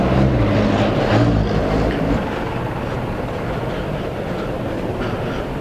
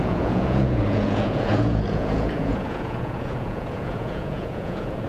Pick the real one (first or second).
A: first